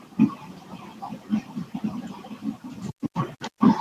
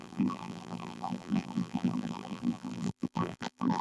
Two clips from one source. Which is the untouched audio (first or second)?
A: first